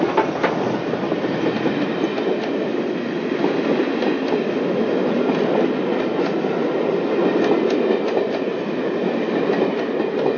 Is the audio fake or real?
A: real